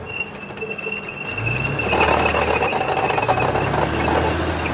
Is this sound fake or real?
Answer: real